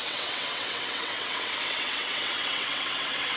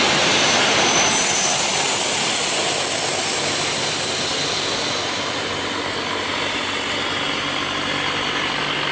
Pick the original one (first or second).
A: second